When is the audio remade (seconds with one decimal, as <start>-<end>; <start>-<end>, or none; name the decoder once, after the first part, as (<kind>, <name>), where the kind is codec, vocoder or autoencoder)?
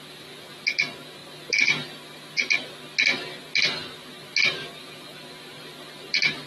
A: none